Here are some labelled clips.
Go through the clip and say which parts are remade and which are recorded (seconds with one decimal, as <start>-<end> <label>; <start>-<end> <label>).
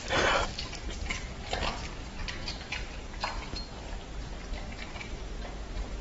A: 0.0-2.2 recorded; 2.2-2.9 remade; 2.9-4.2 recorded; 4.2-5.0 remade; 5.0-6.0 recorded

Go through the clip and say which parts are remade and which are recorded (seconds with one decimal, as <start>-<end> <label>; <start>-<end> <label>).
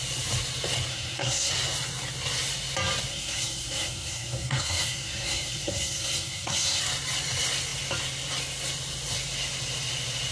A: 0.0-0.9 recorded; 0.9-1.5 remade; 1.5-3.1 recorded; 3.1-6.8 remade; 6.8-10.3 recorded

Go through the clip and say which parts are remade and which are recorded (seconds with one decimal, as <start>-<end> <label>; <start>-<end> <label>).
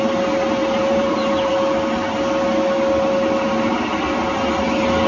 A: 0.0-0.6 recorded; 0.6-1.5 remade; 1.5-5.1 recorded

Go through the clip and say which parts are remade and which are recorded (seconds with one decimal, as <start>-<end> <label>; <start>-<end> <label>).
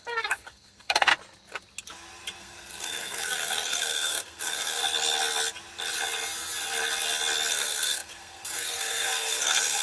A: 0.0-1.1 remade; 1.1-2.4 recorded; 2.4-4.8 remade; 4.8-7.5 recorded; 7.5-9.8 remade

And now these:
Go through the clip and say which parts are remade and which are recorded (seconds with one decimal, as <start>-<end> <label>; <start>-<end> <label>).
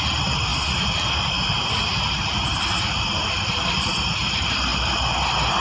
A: 0.0-5.6 recorded